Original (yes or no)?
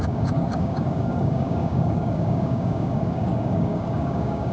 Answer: no